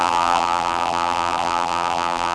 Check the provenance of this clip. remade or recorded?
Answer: remade